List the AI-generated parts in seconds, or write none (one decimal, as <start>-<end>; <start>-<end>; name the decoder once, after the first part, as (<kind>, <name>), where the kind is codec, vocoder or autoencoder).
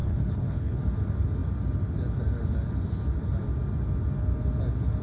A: 0.0-0.8 (codec, HILCodec)